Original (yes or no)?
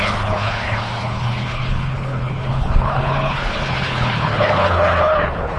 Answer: no